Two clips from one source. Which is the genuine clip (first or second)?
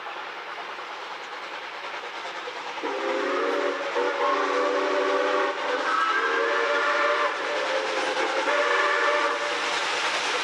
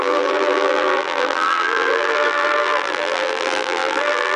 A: first